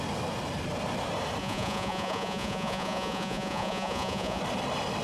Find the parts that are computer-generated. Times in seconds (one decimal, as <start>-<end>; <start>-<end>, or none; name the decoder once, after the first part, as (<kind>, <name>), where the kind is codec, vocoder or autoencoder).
1.4-4.4 (vocoder, Vocos)